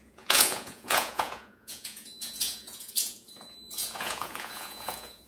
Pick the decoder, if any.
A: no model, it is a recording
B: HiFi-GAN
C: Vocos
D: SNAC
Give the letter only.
C